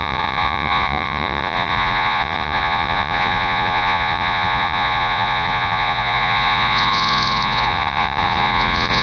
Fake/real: fake